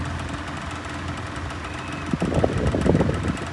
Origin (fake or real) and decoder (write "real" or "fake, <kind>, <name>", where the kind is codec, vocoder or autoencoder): real